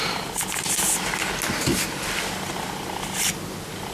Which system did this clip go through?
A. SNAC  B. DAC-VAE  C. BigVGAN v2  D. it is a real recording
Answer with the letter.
D